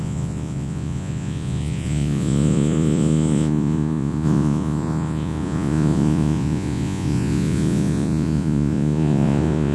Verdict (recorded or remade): remade